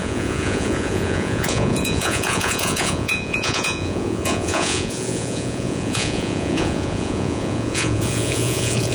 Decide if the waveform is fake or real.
fake